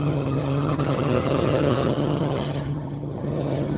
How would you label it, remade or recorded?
remade